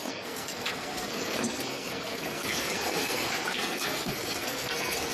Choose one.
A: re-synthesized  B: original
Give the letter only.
A